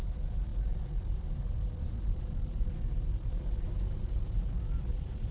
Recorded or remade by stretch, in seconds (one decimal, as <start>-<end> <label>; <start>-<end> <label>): 0.0-0.5 recorded; 0.5-3.7 remade; 3.7-5.3 recorded